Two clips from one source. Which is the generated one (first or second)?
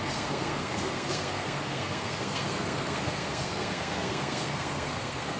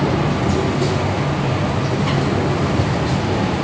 first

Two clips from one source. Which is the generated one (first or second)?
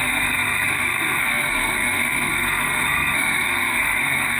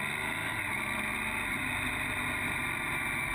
first